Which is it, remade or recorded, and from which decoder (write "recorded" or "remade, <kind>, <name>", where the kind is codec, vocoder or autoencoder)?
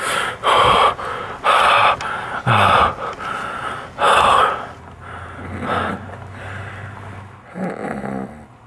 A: recorded